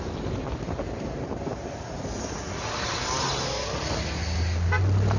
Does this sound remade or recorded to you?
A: recorded